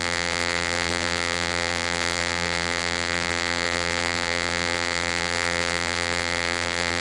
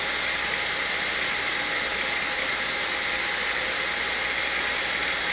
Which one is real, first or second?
second